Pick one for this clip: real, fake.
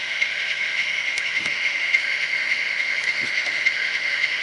fake